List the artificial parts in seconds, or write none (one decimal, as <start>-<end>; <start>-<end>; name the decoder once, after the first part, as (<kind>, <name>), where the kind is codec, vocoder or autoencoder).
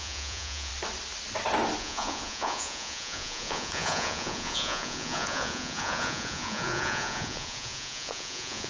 0.0-0.7 (vocoder, Vocos); 1.8-8.7